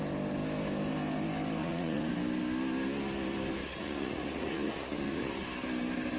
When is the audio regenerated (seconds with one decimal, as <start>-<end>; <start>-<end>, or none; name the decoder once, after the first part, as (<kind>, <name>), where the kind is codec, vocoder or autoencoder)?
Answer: 1.6-2.1 (vocoder, Vocos); 3.6-5.3